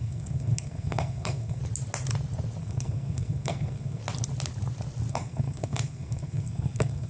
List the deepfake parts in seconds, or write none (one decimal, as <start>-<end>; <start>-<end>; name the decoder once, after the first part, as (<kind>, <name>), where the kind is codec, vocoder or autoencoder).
0.0-1.6 (codec, SNAC); 2.6-4.0; 5.1-7.1